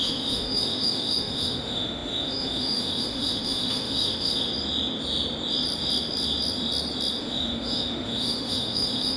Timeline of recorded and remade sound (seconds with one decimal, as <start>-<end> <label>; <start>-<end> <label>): 0.0-4.5 remade; 4.5-7.2 recorded; 7.2-9.2 remade